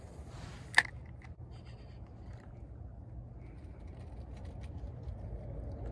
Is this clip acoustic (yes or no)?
yes